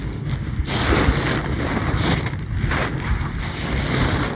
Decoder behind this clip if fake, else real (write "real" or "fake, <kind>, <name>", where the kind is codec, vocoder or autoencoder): real